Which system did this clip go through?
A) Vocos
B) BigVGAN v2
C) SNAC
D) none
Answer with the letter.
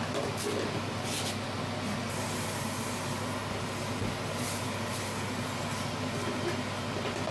D